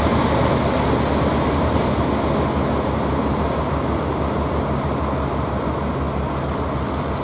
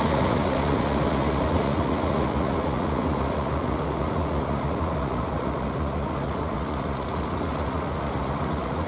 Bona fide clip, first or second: first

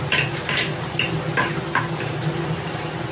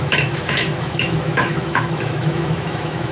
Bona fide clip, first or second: first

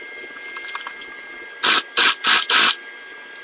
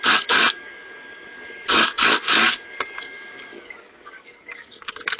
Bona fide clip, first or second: first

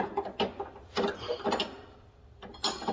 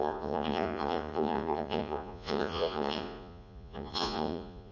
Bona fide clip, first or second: first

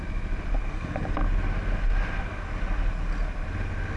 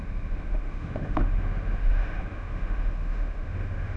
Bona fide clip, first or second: first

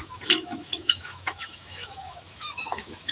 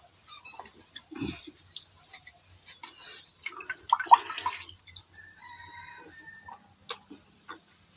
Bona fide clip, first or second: second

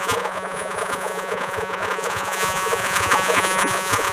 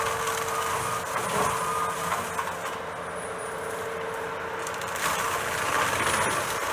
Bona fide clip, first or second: second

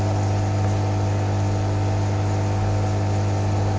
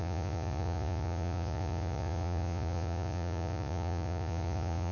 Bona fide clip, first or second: first